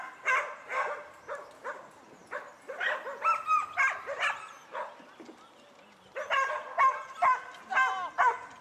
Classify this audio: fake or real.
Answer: real